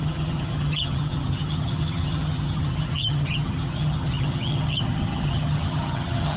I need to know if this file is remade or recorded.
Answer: remade